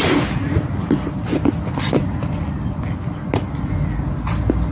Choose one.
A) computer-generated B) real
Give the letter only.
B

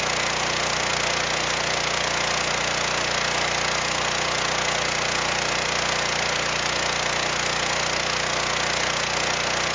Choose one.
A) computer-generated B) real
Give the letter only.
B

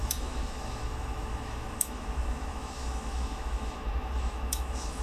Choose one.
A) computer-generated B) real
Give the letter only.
A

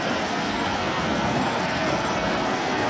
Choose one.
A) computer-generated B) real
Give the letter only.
A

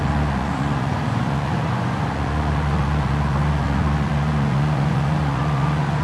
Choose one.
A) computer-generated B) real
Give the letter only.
A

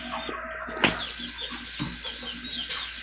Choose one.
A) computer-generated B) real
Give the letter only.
B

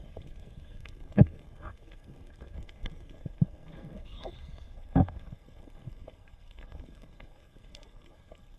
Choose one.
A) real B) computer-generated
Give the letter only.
B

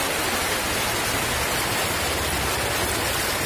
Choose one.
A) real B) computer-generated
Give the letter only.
A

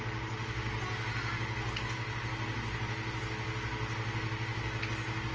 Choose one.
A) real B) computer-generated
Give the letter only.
A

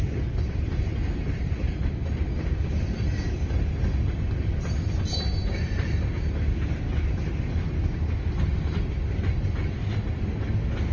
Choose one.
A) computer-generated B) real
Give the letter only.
B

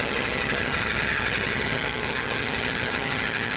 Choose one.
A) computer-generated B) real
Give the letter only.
A